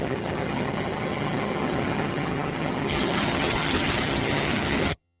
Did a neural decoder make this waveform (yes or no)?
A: yes